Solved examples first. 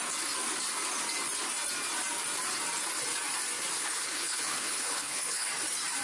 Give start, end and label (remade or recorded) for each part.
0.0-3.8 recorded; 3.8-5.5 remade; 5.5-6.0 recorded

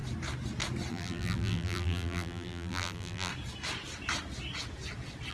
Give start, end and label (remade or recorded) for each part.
0.0-0.9 recorded; 0.9-3.3 remade; 3.3-5.3 recorded

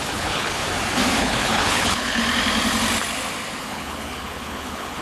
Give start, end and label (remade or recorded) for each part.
0.0-0.6 remade; 0.6-1.2 recorded; 1.2-2.2 remade; 2.2-3.6 recorded; 3.6-5.0 remade

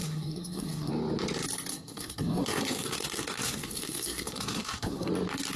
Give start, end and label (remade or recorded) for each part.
0.0-0.9 remade; 0.9-1.7 recorded; 1.7-5.1 remade; 5.1-5.6 recorded

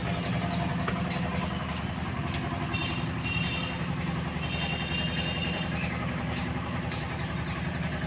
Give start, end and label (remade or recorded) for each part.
0.0-2.8 recorded; 2.8-3.5 remade; 3.5-5.4 recorded; 5.4-8.1 remade

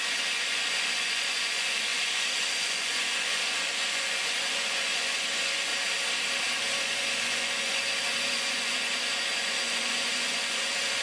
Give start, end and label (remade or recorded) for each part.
0.0-5.7 remade; 5.7-6.5 recorded; 6.5-11.0 remade

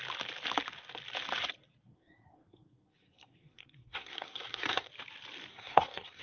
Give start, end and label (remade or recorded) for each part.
0.0-1.9 recorded; 1.9-4.9 remade; 4.9-5.5 recorded; 5.5-6.2 remade